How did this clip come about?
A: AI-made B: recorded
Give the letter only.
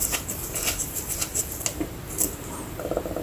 B